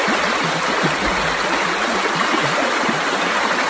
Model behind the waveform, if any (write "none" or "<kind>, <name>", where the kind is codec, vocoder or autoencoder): none